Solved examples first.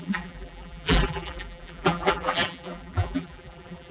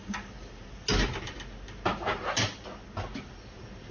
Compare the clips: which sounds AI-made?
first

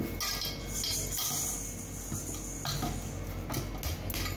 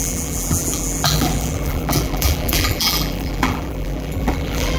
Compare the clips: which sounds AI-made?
second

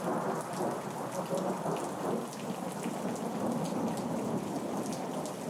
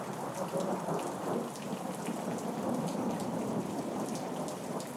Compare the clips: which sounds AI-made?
second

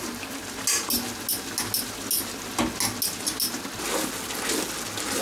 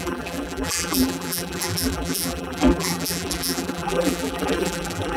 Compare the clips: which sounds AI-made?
second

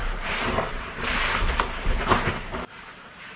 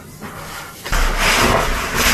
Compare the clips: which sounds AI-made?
first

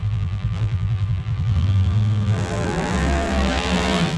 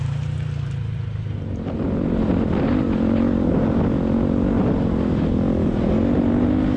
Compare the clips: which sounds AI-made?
first